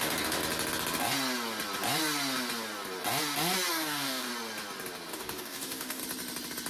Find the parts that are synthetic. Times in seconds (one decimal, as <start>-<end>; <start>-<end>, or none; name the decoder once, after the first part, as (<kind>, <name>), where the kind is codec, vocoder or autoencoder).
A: 0.0-0.4 (codec, DAC); 3.7-4.3; 5.1-6.0